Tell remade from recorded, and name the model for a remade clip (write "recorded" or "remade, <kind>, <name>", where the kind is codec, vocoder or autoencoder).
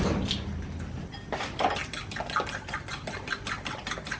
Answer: recorded